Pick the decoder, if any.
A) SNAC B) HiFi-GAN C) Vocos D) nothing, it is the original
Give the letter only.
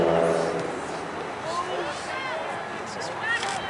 D